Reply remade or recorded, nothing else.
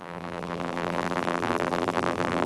remade